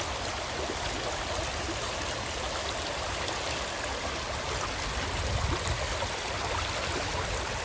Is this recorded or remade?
recorded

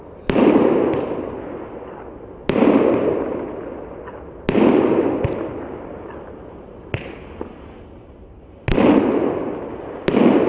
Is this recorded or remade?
recorded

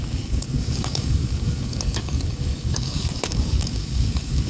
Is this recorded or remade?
remade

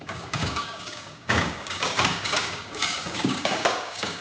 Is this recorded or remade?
remade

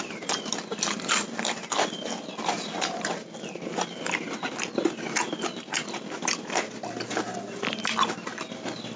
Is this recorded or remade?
recorded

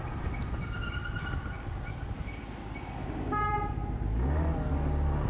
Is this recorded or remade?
recorded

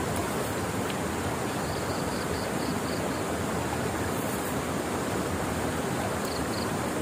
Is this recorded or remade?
recorded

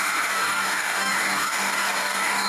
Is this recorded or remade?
remade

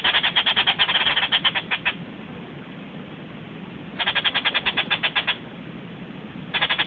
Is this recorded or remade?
recorded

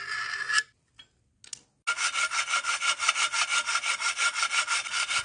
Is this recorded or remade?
recorded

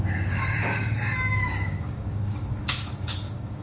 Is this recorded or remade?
remade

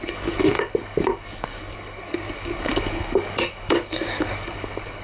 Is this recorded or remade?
remade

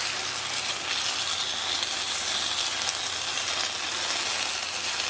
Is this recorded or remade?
recorded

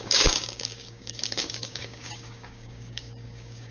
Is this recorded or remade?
remade